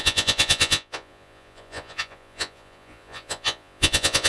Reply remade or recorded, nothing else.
remade